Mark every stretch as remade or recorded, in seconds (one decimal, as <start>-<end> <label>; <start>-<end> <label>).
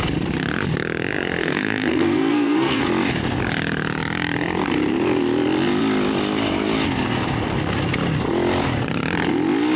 0.0-1.4 recorded; 1.4-2.8 remade; 2.8-9.8 recorded